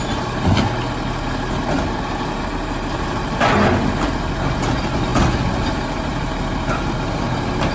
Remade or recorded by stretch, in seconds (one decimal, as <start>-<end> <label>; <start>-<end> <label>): 0.0-7.7 recorded